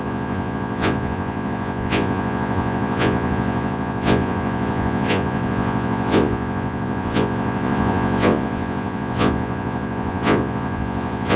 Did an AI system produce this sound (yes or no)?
yes